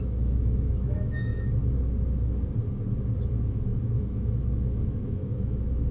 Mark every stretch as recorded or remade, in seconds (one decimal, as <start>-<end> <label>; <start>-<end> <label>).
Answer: 0.0-1.6 remade; 1.6-3.3 recorded; 3.3-5.9 remade